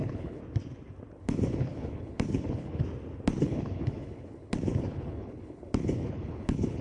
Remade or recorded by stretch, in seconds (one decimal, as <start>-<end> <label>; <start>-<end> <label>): 0.0-0.4 remade; 0.4-1.2 recorded; 1.2-2.8 remade; 2.8-3.4 recorded; 3.4-6.8 remade